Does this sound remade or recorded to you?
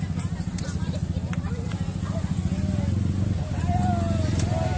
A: recorded